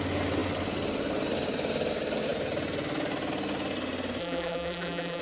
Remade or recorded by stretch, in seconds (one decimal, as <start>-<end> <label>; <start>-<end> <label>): 0.0-4.2 recorded; 4.2-5.2 remade

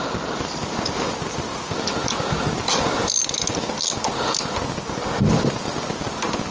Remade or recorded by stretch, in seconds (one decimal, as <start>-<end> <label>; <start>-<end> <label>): 0.0-1.5 remade; 1.5-2.8 recorded; 2.8-3.2 remade; 3.2-5.3 recorded; 5.3-6.5 remade

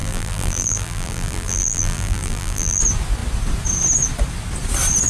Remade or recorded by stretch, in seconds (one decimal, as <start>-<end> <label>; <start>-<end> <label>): 0.0-2.8 remade; 2.8-5.1 recorded

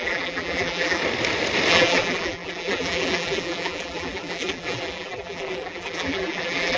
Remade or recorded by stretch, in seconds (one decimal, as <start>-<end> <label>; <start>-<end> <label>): 0.0-1.0 remade; 1.0-1.7 recorded; 1.7-6.8 remade

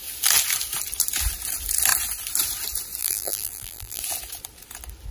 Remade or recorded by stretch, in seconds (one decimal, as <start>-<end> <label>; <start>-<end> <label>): 0.0-3.0 recorded; 3.0-4.0 remade; 4.0-5.1 recorded

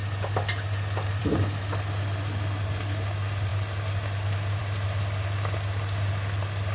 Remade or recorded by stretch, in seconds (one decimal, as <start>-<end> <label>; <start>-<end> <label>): 0.0-6.7 recorded

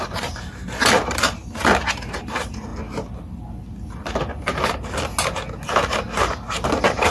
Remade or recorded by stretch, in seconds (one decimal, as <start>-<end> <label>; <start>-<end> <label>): 0.0-1.4 remade; 1.4-2.2 recorded; 2.2-2.7 remade; 2.7-7.1 recorded